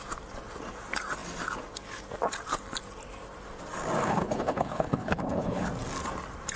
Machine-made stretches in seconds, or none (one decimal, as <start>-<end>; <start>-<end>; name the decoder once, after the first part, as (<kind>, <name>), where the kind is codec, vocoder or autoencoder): 4.0-5.7 (codec, HILCodec)